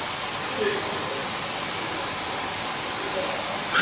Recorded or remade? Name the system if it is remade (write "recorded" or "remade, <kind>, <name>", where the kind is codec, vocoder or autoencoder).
recorded